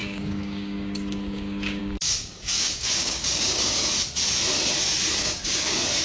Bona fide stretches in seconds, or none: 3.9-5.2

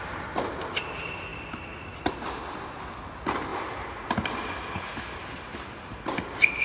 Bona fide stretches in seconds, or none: 0.0-6.6

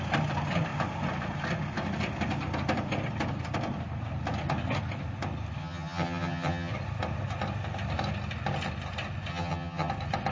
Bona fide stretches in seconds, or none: 0.0-5.6; 6.7-9.3; 9.9-10.3

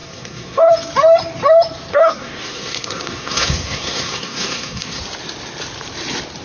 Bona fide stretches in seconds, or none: 0.7-1.9; 5.0-6.4

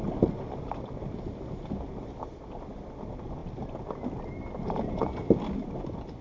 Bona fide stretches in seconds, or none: 0.0-6.2

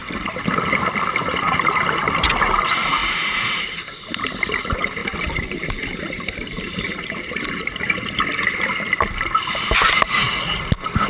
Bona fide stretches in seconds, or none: 0.0-11.1

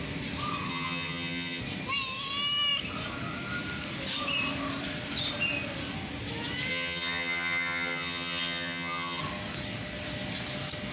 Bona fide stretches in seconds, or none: 0.0-0.7; 1.6-6.7; 9.2-10.9

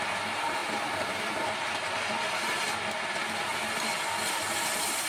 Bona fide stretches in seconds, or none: 0.0-5.1